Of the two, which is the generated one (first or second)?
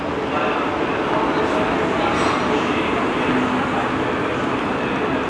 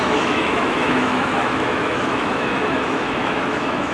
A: second